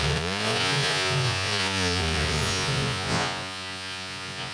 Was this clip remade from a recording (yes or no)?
yes